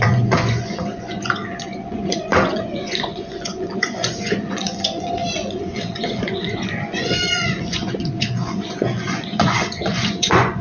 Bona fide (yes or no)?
no